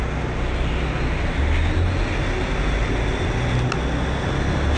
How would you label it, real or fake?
real